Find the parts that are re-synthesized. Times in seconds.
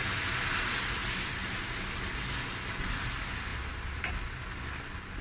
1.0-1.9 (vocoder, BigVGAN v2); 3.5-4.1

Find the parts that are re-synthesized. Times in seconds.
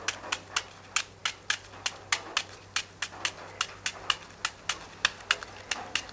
none